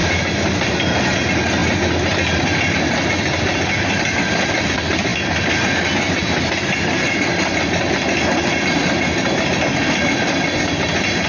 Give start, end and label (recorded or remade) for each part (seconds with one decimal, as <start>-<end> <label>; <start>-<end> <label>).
0.0-11.3 recorded